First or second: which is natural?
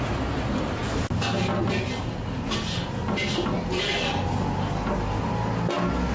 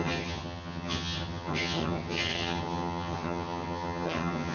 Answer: first